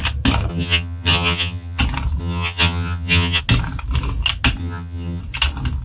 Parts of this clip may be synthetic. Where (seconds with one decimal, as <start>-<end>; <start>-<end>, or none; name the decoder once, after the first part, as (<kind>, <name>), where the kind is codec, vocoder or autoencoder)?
0.5-1.8 (vocoder, HiFi-GAN); 2.2-3.4; 4.6-5.2